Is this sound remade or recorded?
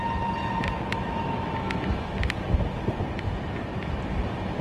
recorded